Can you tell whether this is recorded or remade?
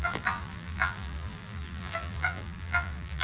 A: remade